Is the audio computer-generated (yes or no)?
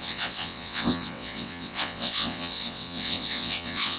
yes